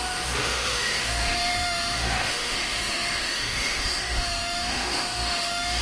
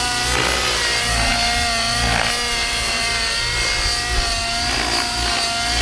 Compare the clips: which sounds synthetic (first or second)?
first